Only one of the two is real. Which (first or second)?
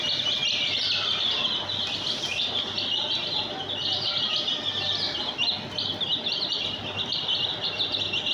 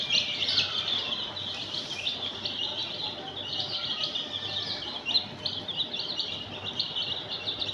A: first